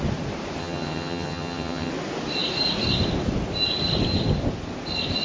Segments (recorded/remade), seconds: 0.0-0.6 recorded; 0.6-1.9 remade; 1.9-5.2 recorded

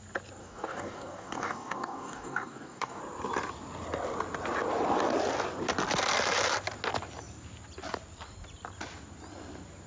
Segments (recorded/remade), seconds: 0.0-0.4 recorded; 0.4-3.0 remade; 3.0-9.9 recorded

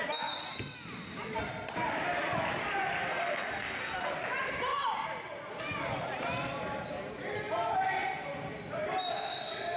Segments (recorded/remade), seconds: 0.0-3.1 recorded; 3.1-4.1 remade; 4.1-9.8 recorded

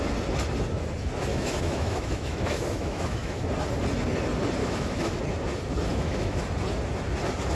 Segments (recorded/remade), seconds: 0.0-1.3 recorded; 1.3-3.4 remade; 3.4-4.6 recorded; 4.6-5.2 remade; 5.2-5.9 recorded; 5.9-6.4 remade; 6.4-7.5 recorded

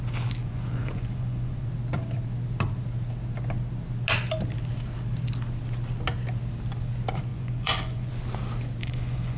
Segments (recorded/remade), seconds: 0.0-0.4 recorded; 0.4-1.6 remade; 1.6-7.3 recorded; 7.3-8.1 remade; 8.1-8.8 recorded; 8.8-9.4 remade

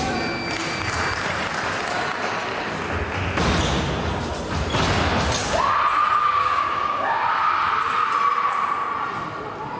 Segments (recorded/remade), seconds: 0.0-6.2 recorded; 6.2-7.2 remade; 7.2-9.8 recorded

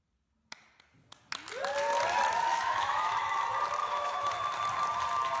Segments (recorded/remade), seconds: 0.0-2.5 recorded; 2.5-3.4 remade; 3.4-3.8 recorded; 3.8-4.3 remade; 4.3-5.4 recorded